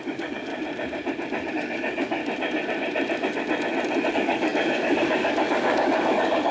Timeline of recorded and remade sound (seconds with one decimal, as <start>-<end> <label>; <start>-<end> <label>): 0.0-0.5 remade; 0.5-1.5 recorded; 1.5-2.2 remade; 2.2-4.1 recorded; 4.1-6.5 remade